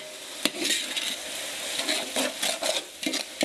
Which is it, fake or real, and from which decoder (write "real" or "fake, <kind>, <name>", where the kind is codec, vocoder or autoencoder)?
real